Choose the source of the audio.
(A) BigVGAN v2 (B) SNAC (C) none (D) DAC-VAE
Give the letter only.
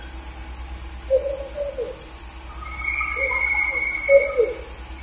C